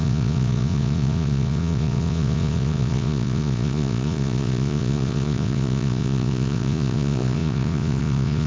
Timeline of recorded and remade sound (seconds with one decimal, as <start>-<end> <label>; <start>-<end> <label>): 0.0-8.5 remade